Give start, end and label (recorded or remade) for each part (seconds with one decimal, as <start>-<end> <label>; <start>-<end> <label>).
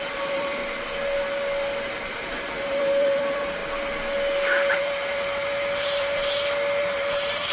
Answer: 0.0-0.6 remade; 0.6-2.2 recorded; 2.2-3.6 remade; 3.6-4.7 recorded; 4.7-6.2 remade; 6.2-6.8 recorded; 6.8-7.5 remade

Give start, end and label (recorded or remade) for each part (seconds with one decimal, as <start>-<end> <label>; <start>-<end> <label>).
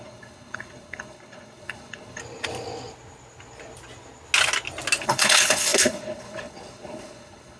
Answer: 0.0-2.2 remade; 2.2-5.0 recorded; 5.0-7.6 remade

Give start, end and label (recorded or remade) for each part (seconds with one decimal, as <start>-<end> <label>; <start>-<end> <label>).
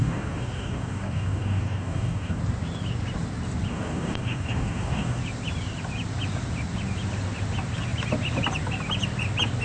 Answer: 0.0-2.4 remade; 2.4-3.7 recorded; 3.7-5.2 remade; 5.2-9.6 recorded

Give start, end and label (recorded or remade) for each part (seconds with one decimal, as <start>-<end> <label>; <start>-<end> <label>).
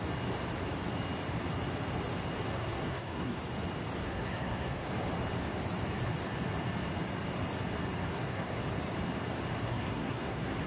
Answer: 0.0-2.5 recorded; 2.5-3.4 remade; 3.4-4.0 recorded; 4.0-4.9 remade; 4.9-8.1 recorded; 8.1-8.6 remade; 8.6-9.6 recorded; 9.6-10.7 remade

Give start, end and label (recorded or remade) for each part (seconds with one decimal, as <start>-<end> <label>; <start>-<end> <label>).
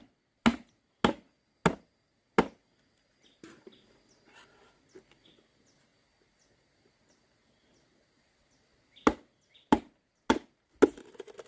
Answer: 0.0-11.5 recorded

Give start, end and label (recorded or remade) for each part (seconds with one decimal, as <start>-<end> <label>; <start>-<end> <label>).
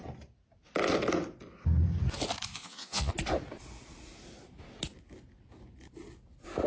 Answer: 0.0-2.5 recorded; 2.5-3.1 remade; 3.1-6.7 recorded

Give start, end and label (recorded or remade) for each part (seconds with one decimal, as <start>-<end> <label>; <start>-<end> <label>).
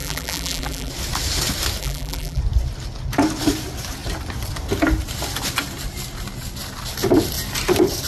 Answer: 0.0-0.9 remade; 0.9-1.8 recorded; 1.8-2.4 remade; 2.4-8.1 recorded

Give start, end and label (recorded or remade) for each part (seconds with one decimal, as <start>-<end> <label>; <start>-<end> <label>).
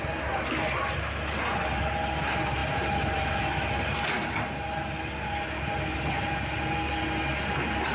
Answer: 0.0-7.9 recorded